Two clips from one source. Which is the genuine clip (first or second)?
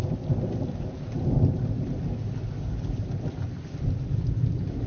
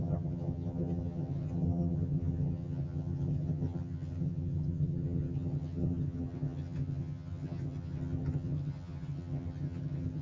first